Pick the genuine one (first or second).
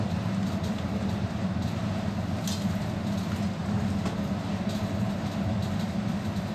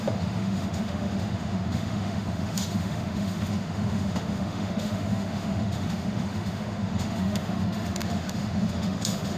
first